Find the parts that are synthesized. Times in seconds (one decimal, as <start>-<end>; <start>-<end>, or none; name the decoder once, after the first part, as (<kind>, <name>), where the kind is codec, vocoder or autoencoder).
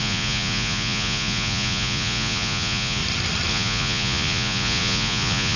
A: 0.0-3.0 (vocoder, Vocos); 3.5-5.6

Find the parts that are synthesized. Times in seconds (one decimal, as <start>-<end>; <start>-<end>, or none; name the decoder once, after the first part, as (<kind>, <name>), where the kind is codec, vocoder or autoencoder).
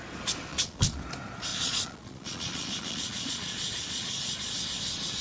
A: 0.5-1.0 (vocoder, Vocos); 1.5-4.6